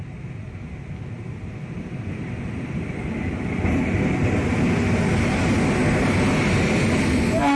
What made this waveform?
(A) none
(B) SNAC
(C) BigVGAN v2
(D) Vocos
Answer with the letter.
A